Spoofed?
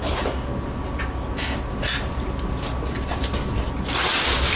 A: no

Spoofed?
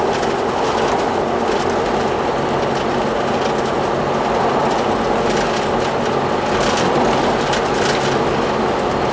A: no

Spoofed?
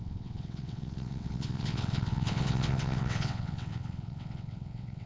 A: yes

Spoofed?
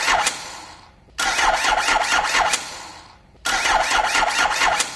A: no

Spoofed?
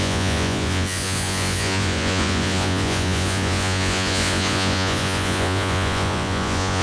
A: yes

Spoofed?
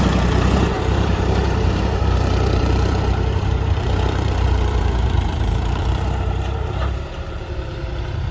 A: yes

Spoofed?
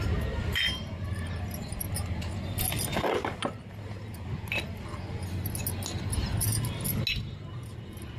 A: no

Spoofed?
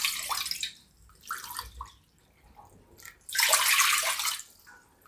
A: no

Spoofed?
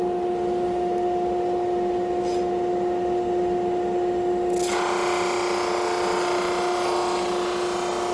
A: no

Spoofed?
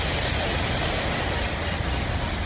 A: no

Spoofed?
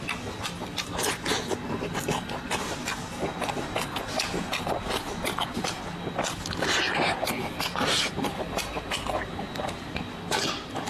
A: no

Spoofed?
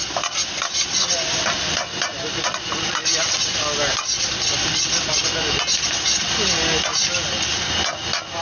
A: no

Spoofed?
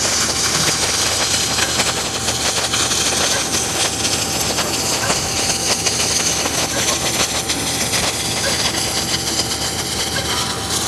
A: no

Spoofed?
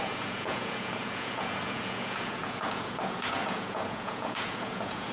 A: yes